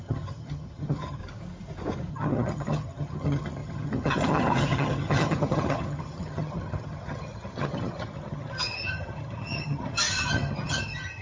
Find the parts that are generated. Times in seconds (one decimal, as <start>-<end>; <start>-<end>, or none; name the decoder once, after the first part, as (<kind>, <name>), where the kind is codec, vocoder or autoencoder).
0.0-1.2 (vocoder, HiFi-GAN); 2.1-11.2